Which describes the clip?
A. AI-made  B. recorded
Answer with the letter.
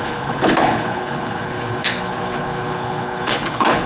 A